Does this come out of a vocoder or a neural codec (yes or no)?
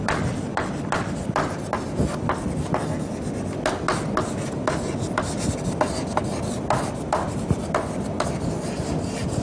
no